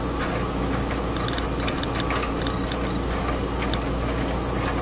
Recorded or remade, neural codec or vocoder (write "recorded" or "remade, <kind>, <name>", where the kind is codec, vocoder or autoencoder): recorded